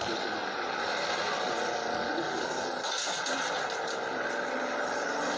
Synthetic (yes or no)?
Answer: no